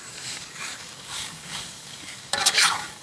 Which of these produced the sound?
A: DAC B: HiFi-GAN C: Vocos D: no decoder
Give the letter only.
A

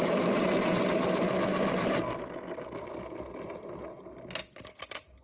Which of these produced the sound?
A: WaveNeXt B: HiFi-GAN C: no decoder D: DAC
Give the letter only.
C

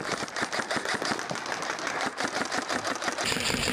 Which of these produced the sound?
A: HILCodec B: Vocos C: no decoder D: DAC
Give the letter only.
C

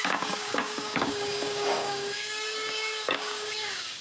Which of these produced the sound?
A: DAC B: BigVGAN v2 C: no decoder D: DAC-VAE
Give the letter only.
A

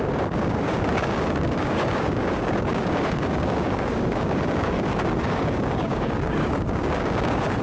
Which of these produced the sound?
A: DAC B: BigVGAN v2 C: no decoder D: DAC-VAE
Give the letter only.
A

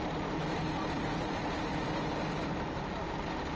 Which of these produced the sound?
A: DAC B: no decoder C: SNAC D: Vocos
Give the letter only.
B